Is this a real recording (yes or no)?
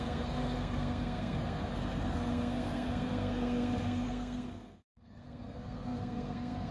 no